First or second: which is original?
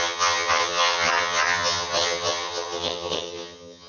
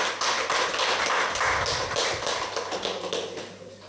second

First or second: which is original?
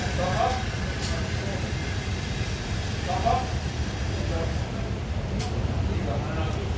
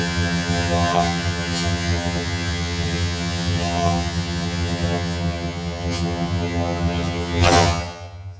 first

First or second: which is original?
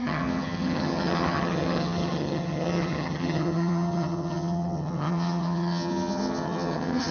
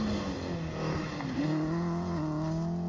second